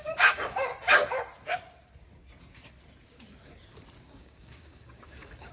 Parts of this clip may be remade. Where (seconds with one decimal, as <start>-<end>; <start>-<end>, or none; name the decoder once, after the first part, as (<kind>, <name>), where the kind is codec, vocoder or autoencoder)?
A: 0.0-0.7 (codec, DAC); 4.0-5.5